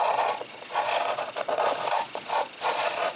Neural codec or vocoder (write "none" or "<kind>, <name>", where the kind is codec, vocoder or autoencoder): vocoder, Vocos